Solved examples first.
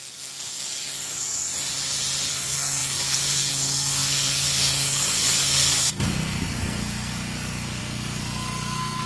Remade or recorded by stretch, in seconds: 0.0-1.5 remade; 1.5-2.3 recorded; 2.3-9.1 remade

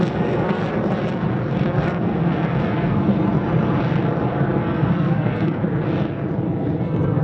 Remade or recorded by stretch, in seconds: 0.0-0.6 remade; 0.6-1.6 recorded; 1.6-3.1 remade; 3.1-4.6 recorded; 4.6-5.6 remade; 5.6-6.8 recorded; 6.8-7.2 remade

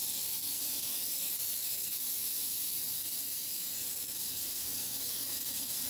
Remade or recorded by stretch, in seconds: 0.0-5.9 remade

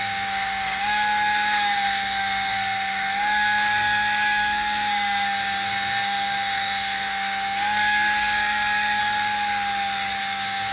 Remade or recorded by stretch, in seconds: 0.0-9.0 remade; 9.0-10.2 recorded; 10.2-10.7 remade